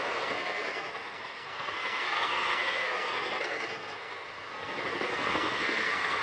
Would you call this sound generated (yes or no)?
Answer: yes